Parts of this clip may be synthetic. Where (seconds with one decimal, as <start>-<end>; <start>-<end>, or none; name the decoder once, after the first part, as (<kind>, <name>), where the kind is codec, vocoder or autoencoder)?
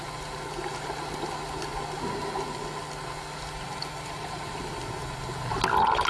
none